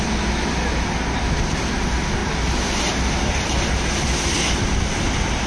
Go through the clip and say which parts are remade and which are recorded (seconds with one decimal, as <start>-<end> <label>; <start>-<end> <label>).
0.0-5.5 recorded